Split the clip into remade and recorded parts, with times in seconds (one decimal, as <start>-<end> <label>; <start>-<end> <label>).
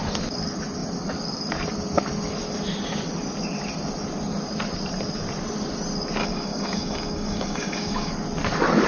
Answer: 0.0-6.2 recorded; 6.2-8.1 remade; 8.1-8.9 recorded